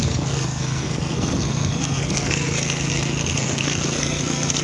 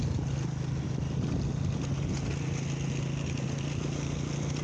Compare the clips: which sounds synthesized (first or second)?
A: first